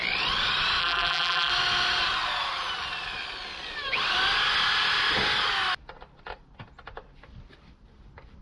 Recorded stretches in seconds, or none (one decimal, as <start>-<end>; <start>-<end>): 0.0-0.8; 1.5-8.4